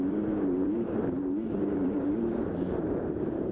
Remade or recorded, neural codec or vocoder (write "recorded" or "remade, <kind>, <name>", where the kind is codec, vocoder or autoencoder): remade, vocoder, BigVGAN v2